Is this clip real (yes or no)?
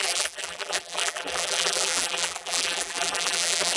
no